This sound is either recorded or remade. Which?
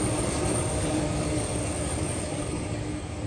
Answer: remade